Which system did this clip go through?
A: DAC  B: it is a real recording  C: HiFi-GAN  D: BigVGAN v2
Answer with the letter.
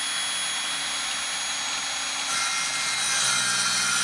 B